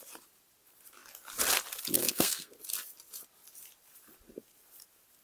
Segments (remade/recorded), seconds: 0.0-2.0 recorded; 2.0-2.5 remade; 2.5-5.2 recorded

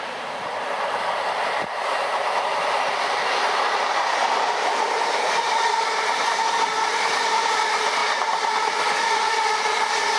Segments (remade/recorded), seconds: 0.0-8.0 remade; 8.0-10.2 recorded

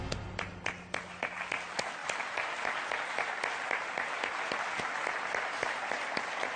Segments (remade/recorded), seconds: 0.0-6.6 recorded

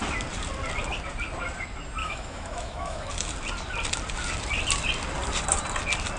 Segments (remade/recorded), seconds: 0.0-2.0 recorded; 2.0-3.1 remade; 3.1-6.2 recorded

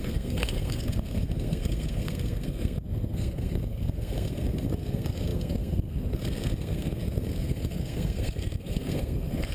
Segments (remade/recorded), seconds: 0.0-9.5 remade